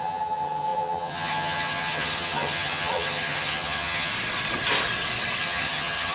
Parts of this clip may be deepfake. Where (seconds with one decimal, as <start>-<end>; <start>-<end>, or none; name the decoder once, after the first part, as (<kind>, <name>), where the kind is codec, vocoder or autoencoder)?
0.0-4.1 (vocoder, HiFi-GAN); 5.4-6.1